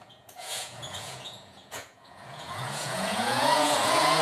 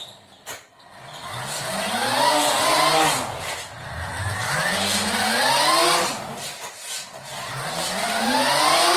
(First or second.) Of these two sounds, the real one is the second